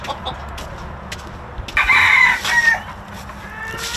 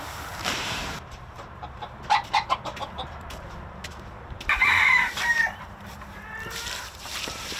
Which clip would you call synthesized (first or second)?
second